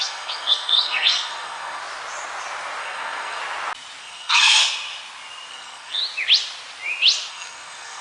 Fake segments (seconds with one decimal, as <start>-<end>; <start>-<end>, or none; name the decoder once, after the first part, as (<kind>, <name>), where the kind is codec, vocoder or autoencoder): 0.0-1.8 (codec, SNAC); 2.8-3.4; 4.0-4.6; 5.5-6.0; 7.3-8.0